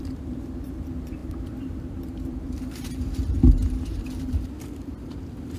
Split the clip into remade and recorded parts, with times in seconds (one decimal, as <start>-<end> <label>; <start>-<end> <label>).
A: 0.0-5.6 remade